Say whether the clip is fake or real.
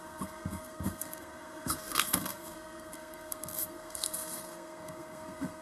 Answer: fake